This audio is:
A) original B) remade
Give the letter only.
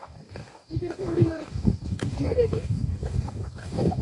B